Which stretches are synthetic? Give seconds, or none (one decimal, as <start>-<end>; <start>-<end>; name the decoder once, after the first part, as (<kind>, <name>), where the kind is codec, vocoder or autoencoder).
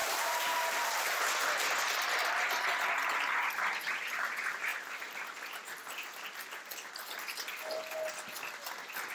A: 0.0-1.2 (vocoder, BigVGAN v2)